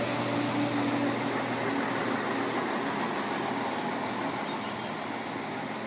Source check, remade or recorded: recorded